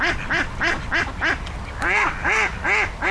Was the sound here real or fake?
real